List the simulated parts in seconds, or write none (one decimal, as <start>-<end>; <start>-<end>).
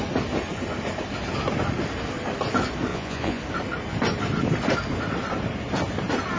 2.9-3.4